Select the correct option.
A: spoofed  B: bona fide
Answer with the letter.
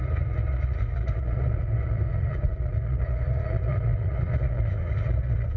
A